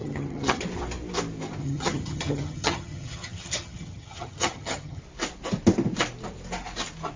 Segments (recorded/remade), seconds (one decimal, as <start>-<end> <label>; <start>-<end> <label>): 0.0-0.6 remade; 0.6-1.6 recorded; 1.6-5.0 remade; 5.0-7.2 recorded

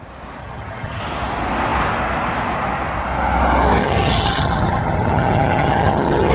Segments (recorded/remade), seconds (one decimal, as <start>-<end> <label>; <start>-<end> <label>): 0.0-0.4 recorded; 0.4-1.0 remade; 1.0-3.8 recorded; 3.8-6.3 remade